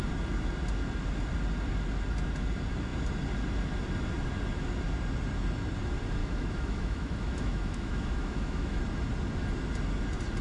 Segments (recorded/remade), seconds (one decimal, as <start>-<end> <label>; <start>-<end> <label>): 0.0-6.2 recorded; 6.2-8.8 remade; 8.8-10.4 recorded